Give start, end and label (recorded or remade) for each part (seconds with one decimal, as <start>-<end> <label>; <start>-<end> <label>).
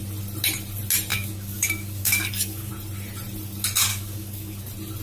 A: 0.0-1.1 recorded; 1.1-2.7 remade; 2.7-3.9 recorded; 3.9-4.6 remade; 4.6-5.0 recorded